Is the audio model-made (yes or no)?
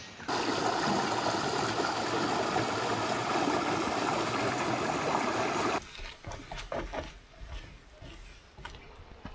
no